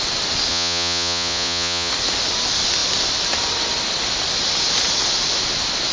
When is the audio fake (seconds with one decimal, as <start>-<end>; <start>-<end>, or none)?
0.5-1.9